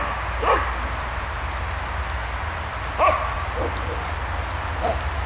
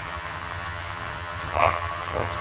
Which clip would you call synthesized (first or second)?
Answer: second